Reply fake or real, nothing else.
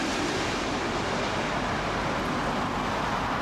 real